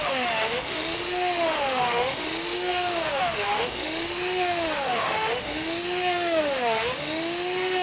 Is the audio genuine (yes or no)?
no